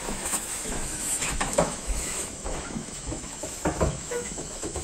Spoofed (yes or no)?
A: yes